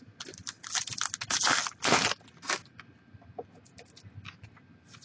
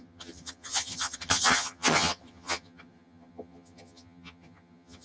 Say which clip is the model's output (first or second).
second